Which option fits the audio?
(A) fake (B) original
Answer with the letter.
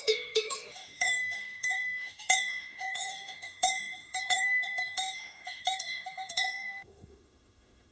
A